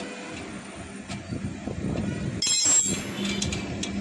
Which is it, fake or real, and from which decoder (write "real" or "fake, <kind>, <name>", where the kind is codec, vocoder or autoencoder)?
real